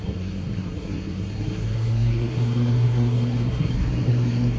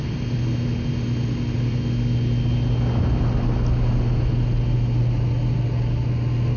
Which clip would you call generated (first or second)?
first